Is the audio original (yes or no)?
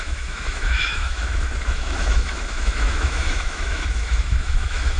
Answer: no